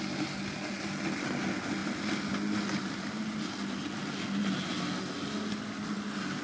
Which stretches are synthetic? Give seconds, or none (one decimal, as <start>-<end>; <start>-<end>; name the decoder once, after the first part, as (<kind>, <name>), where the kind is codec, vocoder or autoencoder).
none